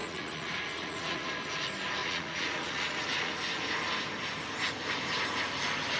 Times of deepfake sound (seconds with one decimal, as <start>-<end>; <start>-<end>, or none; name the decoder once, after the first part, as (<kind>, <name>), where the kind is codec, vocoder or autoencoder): 0.0-1.3 (vocoder, Vocos); 2.0-3.3